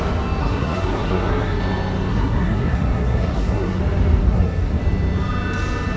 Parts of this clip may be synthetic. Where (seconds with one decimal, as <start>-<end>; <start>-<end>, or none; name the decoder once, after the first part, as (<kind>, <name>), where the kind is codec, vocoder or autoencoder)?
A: 0.4-1.6 (codec, SNAC); 2.1-3.8; 4.2-4.8